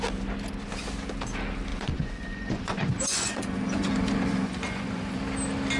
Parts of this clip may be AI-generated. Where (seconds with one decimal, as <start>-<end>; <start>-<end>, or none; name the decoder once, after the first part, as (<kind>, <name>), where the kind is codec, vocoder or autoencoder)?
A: 1.7-5.2 (vocoder, Vocos)